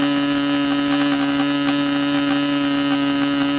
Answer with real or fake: real